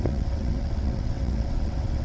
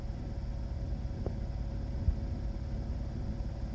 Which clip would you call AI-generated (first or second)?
first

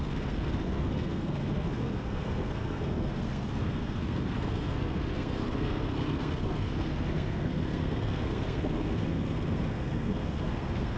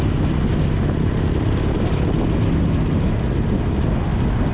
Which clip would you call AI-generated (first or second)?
first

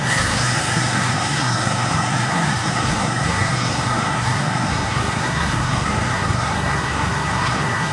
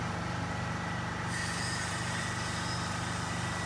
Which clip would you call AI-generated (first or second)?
first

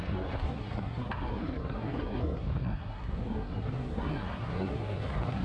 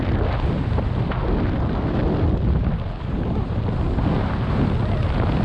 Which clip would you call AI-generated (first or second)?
first